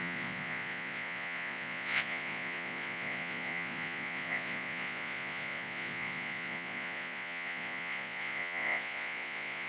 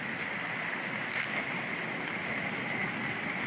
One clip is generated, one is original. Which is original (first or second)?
second